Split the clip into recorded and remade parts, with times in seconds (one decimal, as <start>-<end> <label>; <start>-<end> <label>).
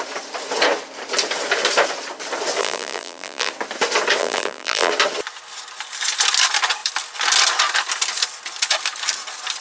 0.0-2.6 recorded; 2.6-3.5 remade; 3.5-4.2 recorded; 4.2-4.9 remade; 4.9-9.6 recorded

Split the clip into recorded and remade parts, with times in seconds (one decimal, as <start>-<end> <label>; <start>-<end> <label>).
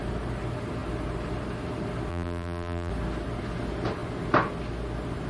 0.0-2.1 recorded; 2.1-2.9 remade; 2.9-5.3 recorded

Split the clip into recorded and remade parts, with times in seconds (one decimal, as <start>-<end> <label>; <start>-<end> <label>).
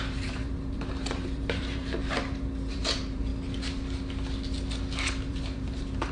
0.0-2.0 remade; 2.0-2.7 recorded; 2.7-3.3 remade; 3.3-5.3 recorded; 5.3-6.1 remade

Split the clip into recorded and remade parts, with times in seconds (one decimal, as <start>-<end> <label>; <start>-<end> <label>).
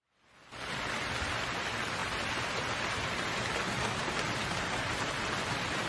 0.0-5.9 recorded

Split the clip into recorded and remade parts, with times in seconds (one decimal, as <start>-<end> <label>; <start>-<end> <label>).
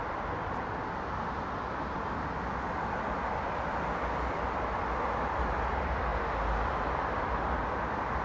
0.0-8.2 recorded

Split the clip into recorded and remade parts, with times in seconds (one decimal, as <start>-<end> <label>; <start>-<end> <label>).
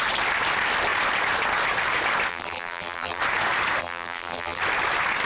0.0-2.3 recorded; 2.3-3.2 remade; 3.2-3.8 recorded; 3.8-4.6 remade; 4.6-5.3 recorded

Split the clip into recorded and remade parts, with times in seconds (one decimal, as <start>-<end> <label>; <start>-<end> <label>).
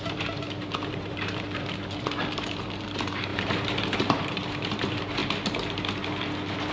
0.0-5.2 remade; 5.2-6.7 recorded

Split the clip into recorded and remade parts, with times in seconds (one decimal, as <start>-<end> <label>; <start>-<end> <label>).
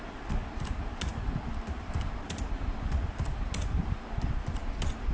0.0-5.1 recorded